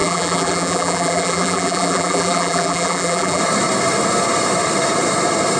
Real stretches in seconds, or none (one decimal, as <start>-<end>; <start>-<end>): 3.4-5.6